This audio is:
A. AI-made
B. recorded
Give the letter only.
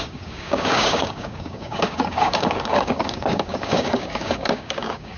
A